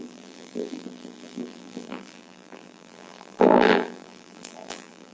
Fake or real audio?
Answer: fake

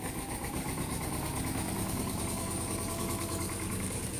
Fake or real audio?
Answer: fake